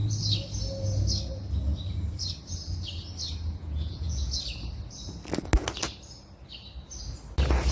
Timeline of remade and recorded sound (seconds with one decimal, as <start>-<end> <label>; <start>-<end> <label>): 0.0-3.6 recorded; 3.6-4.4 remade; 4.4-7.7 recorded